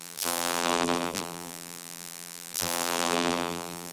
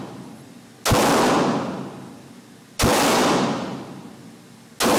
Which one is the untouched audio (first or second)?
second